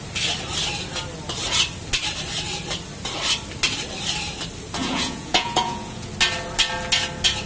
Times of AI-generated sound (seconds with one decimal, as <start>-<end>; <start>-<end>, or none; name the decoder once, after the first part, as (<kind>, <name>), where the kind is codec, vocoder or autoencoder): 4.8-6.1 (vocoder, Vocos)